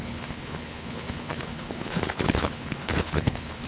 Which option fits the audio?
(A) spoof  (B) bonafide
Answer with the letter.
A